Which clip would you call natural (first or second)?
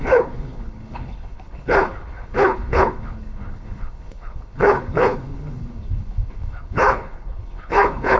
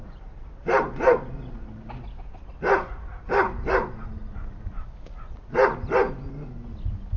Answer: second